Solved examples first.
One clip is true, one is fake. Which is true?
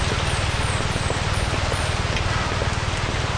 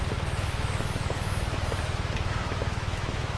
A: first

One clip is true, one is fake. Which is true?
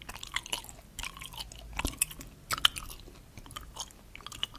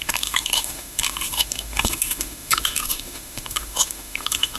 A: first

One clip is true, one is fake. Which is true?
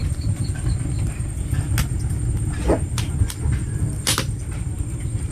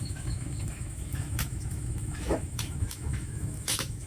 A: first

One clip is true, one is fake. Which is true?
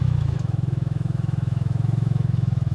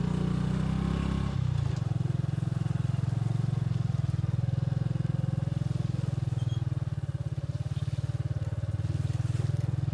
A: second